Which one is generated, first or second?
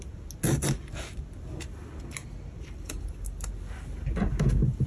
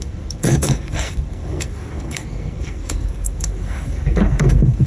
second